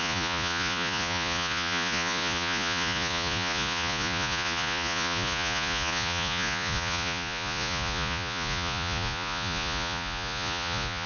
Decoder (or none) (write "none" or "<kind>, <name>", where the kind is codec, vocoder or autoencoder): vocoder, Vocos